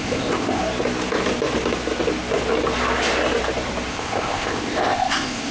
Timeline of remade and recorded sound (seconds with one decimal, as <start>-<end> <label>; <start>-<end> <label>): 0.0-0.6 remade; 0.6-3.9 recorded; 3.9-5.5 remade